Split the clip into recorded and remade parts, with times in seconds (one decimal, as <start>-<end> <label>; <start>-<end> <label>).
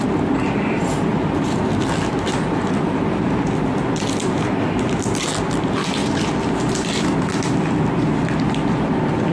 0.0-9.3 recorded